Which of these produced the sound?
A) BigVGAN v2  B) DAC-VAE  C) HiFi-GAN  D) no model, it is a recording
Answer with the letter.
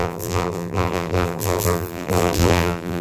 A